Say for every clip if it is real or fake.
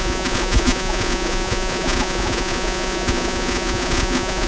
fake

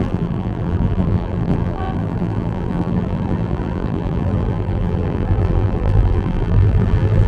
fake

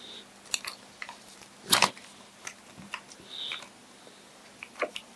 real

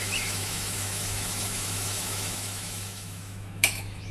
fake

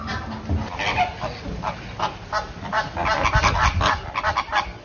real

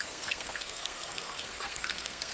fake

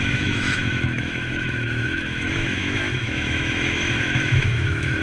fake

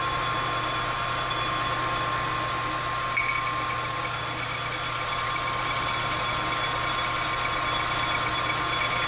real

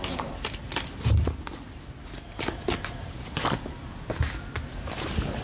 real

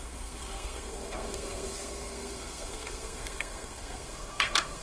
fake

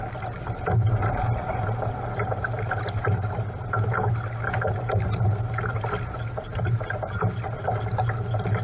real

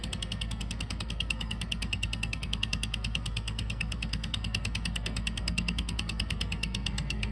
fake